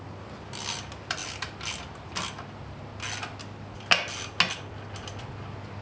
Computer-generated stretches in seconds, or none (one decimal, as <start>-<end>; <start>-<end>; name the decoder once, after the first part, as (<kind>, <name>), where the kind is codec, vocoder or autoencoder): none